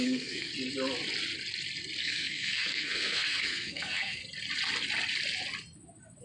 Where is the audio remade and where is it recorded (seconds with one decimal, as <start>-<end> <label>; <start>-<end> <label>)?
0.0-0.5 remade; 0.5-2.0 recorded; 2.0-4.2 remade; 4.2-6.2 recorded